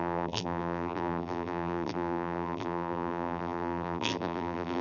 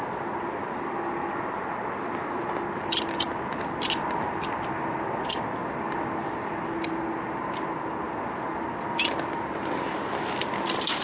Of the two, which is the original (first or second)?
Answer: second